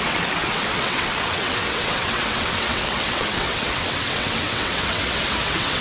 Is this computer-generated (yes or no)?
yes